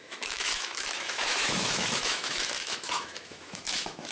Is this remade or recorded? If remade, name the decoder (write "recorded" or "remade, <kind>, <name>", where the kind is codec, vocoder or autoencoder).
remade, autoencoder, DAC-VAE